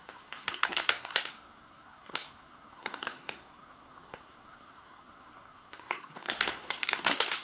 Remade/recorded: remade